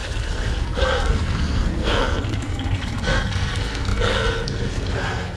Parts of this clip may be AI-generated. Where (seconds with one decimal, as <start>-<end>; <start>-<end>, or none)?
0.0-5.4